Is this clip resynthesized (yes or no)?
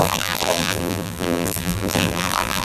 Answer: yes